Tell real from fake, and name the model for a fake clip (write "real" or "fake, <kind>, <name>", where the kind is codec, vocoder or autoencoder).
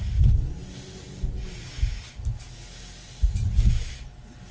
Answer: real